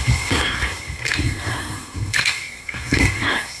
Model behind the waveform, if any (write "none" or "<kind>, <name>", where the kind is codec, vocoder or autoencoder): codec, SNAC